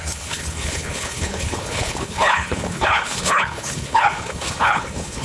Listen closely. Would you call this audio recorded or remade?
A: remade